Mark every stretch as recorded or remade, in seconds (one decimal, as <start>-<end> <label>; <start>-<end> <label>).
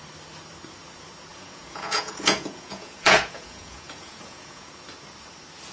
0.0-1.3 recorded; 1.3-4.7 remade; 4.7-5.7 recorded